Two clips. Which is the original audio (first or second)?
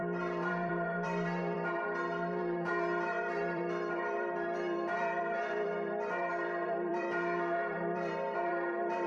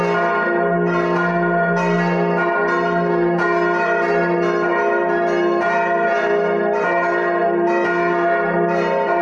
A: second